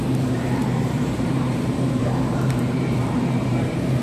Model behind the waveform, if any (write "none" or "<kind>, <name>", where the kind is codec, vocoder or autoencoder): vocoder, BigVGAN v2